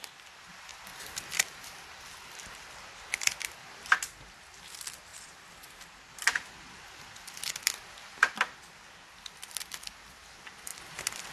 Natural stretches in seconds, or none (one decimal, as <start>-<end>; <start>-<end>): 0.0-0.7; 3.3-5.1; 8.9-10.7